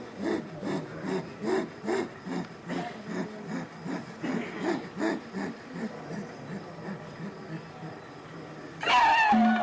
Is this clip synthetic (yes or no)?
no